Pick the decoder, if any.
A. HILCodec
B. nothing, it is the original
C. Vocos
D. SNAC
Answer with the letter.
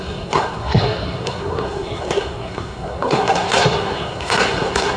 D